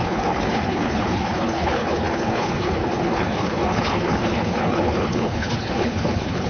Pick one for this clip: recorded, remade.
remade